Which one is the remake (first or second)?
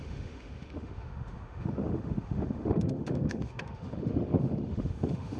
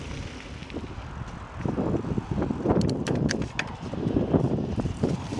first